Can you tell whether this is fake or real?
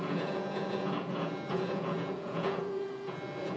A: fake